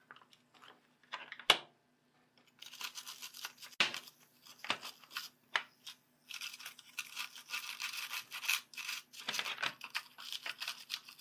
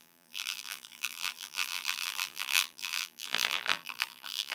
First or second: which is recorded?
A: first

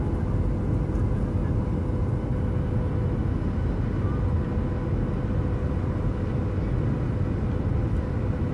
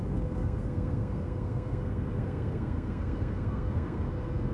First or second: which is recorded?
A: first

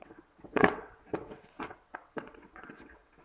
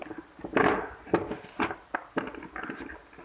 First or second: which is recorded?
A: second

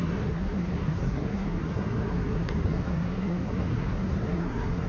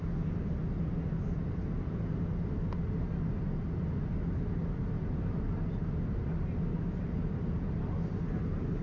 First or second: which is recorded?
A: second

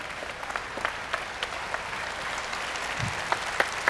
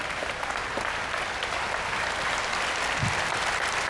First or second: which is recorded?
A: first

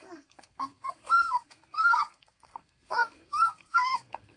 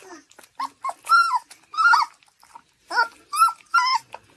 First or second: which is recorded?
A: second